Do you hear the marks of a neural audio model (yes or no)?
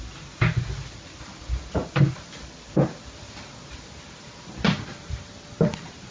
no